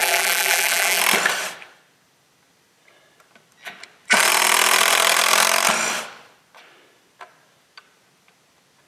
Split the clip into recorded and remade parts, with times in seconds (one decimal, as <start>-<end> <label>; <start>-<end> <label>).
0.0-1.0 remade; 1.0-8.9 recorded